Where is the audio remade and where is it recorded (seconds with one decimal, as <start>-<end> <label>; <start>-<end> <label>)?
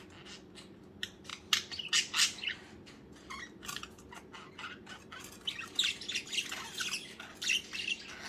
0.0-8.3 recorded